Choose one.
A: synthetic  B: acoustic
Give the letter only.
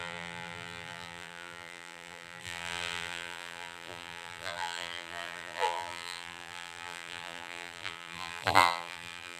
A